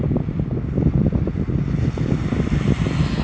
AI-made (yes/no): no